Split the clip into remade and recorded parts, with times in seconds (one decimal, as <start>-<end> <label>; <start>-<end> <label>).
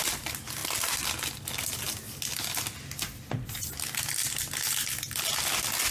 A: 0.0-5.9 recorded